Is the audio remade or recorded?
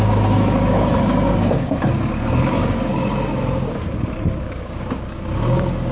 remade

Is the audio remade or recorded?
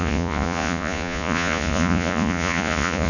remade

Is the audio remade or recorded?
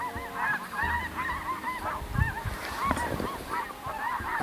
recorded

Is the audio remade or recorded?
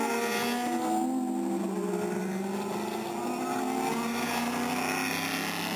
recorded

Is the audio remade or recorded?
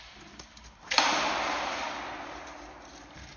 recorded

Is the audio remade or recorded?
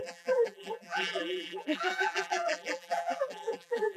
remade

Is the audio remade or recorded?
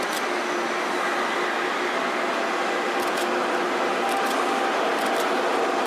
recorded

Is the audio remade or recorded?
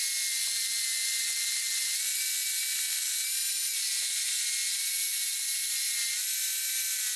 recorded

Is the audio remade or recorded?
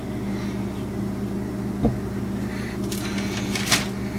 recorded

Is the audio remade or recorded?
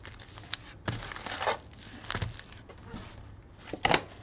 recorded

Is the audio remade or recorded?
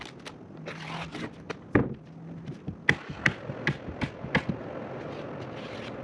recorded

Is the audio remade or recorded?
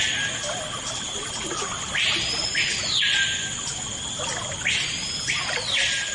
recorded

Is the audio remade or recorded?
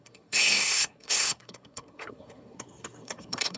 remade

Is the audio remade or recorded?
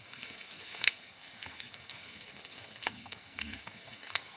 remade